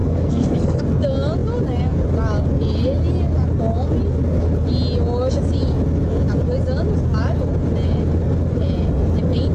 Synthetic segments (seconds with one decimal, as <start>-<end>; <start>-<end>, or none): 0.0-0.8